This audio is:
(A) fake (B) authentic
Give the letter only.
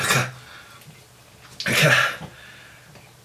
B